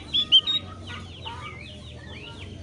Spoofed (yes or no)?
no